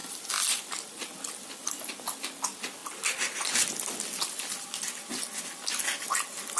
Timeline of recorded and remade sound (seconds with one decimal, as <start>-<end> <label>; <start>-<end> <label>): 0.0-0.7 remade; 0.7-6.6 recorded